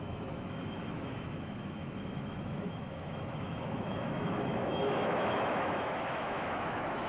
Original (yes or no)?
no